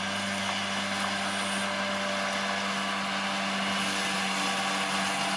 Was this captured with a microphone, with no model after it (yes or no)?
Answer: yes